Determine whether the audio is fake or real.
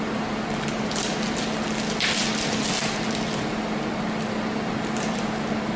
real